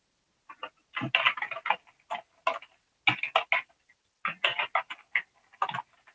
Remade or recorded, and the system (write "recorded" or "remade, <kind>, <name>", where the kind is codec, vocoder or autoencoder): recorded